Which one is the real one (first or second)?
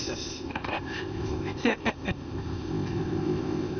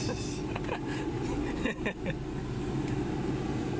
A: second